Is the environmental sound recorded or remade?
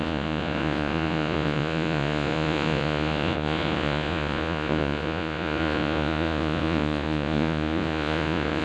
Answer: remade